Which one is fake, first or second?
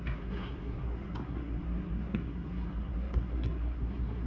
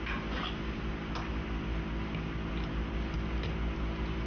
first